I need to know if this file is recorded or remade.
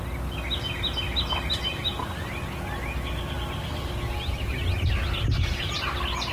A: recorded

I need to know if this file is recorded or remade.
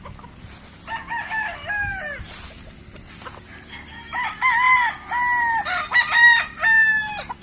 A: recorded